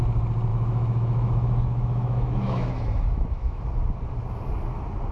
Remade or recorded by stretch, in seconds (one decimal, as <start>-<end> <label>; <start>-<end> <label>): 0.0-0.5 recorded; 0.5-3.6 remade; 3.6-5.1 recorded